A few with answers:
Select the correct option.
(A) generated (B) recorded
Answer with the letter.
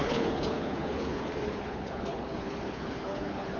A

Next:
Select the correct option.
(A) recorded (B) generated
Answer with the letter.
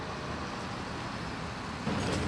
A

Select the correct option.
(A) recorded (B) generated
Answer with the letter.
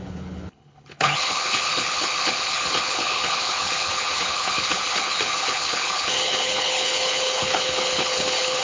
B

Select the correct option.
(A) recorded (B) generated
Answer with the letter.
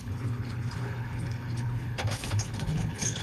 B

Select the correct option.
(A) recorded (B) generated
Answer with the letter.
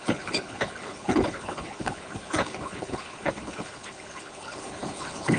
B